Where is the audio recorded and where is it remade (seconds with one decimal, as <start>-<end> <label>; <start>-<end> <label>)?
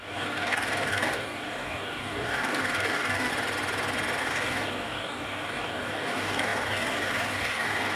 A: 0.0-3.3 remade; 3.3-4.2 recorded; 4.2-8.0 remade